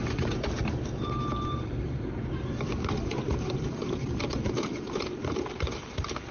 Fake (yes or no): yes